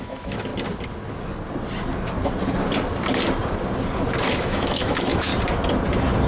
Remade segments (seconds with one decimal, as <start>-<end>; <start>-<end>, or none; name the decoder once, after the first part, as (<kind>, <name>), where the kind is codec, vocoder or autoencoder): 0.0-0.5 (autoencoder, DAC-VAE); 4.3-5.3